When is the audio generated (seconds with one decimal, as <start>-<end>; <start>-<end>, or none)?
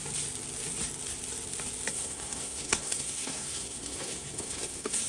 1.9-5.1